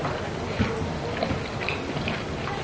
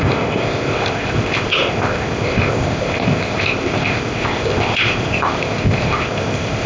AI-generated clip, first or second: second